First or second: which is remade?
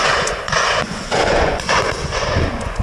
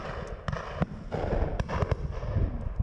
first